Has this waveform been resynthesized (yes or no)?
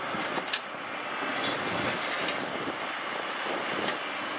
no